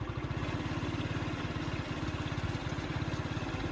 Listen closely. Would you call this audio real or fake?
real